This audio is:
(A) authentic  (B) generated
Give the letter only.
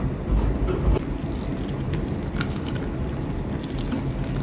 A